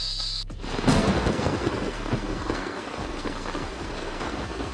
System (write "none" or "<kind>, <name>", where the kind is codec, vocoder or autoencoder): codec, SNAC